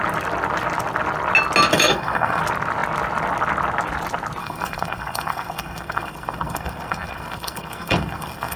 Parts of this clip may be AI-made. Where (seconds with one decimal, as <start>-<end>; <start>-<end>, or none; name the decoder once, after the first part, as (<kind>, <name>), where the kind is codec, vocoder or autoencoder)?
1.7-2.4 (codec, SNAC); 4.4-8.6